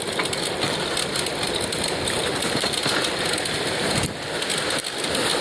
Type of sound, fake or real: real